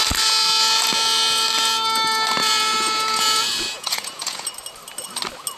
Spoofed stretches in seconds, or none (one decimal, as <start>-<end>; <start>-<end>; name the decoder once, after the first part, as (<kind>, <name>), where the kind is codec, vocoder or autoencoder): 2.4-4.5 (vocoder, Vocos)